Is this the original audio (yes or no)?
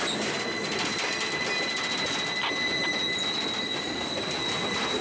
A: yes